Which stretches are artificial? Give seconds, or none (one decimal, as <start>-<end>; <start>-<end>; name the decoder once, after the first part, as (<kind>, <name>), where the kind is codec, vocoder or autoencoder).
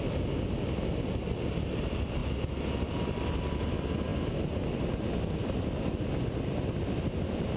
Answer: none